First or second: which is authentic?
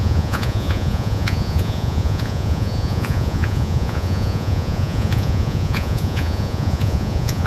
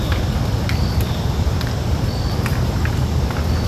second